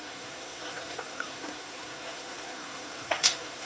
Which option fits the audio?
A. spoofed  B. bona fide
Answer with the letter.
A